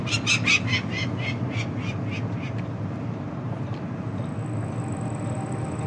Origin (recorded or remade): recorded